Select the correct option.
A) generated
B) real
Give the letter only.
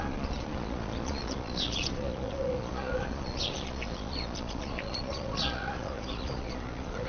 A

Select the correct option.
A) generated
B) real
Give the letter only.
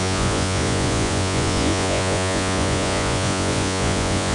A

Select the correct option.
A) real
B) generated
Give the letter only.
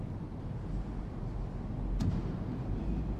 A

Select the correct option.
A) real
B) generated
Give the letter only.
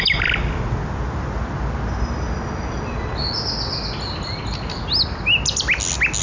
A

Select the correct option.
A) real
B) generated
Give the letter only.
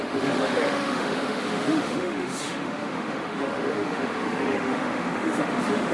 B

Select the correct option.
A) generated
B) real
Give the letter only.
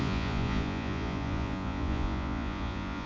A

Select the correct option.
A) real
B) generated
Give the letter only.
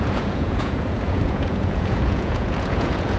B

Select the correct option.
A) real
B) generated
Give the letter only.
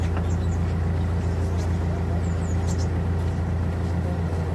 A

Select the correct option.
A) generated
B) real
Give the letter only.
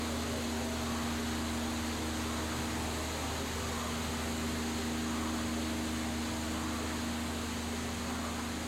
B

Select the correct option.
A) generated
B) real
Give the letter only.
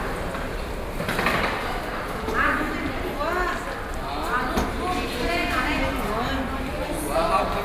B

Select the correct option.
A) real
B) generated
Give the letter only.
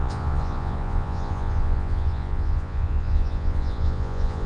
B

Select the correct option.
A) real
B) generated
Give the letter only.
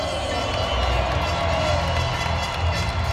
A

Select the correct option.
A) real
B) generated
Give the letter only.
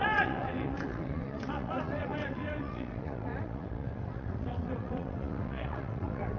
B